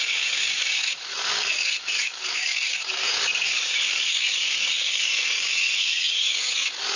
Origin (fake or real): fake